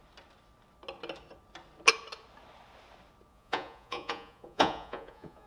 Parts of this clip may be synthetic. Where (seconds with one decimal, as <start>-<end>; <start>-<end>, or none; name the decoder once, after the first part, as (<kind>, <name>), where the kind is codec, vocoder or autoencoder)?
3.3-5.5 (vocoder, Vocos)